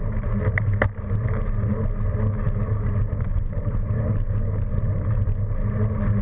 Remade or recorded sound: recorded